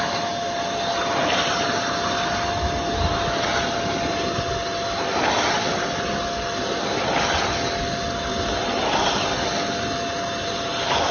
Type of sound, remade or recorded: recorded